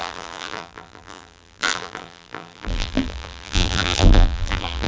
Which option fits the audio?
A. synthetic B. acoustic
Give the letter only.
A